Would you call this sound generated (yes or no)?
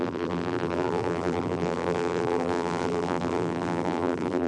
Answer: yes